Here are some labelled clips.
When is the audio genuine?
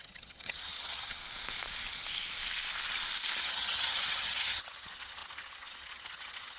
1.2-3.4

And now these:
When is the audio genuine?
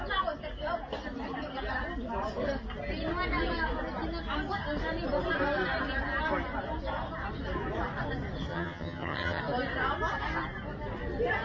0.0-8.5; 9.4-11.4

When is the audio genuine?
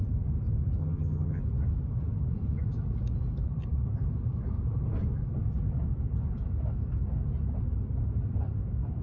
0.0-0.8; 1.4-9.0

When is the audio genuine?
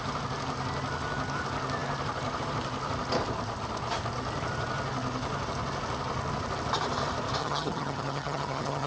0.0-7.4